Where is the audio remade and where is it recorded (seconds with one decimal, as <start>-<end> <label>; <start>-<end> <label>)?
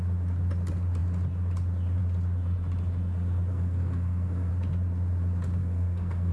0.0-3.5 recorded; 3.5-4.5 remade; 4.5-5.6 recorded; 5.6-6.3 remade